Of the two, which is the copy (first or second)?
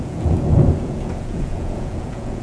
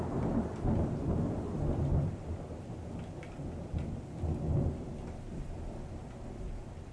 first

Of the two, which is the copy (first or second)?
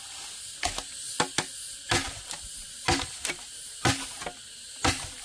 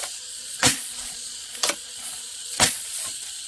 second